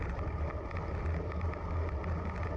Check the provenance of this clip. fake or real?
real